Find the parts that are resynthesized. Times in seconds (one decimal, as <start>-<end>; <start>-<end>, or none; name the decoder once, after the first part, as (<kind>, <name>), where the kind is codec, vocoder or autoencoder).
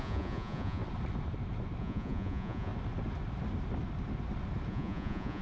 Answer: 0.0-0.8 (vocoder, Vocos); 1.8-2.7; 4.7-5.4